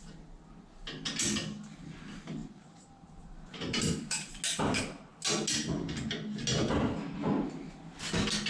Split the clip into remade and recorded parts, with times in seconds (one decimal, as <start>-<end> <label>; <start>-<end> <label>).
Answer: 0.0-2.4 recorded; 2.4-4.3 remade; 4.3-8.5 recorded